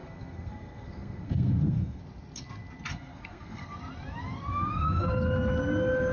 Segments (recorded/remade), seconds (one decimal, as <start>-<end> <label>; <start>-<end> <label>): 0.0-2.0 remade; 2.0-2.9 recorded; 2.9-3.7 remade; 3.7-4.5 recorded; 4.5-5.1 remade; 5.1-6.1 recorded